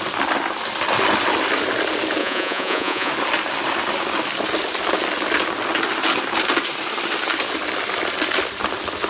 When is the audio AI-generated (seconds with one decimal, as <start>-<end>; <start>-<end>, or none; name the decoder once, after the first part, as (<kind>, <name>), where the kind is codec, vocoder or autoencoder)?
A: 2.2-3.1 (vocoder, Vocos)